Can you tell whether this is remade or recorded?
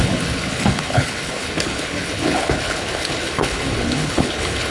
remade